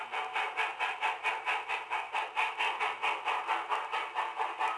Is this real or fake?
real